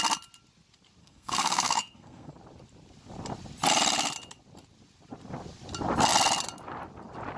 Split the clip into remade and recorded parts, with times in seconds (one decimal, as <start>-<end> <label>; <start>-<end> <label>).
0.0-1.0 recorded; 1.0-2.3 remade; 2.3-7.4 recorded